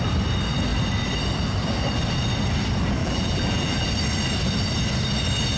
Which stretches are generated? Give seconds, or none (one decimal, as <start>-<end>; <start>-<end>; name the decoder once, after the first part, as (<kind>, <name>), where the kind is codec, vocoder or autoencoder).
3.0-3.9 (vocoder, BigVGAN v2)